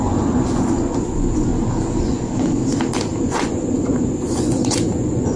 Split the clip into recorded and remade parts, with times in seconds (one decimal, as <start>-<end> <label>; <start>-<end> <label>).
0.0-1.5 remade; 1.5-2.0 recorded; 2.0-2.6 remade; 2.6-3.2 recorded; 3.2-5.4 remade